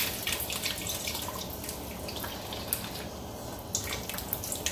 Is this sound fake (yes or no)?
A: no